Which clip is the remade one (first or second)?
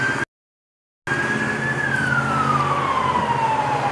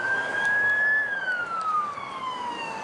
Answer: second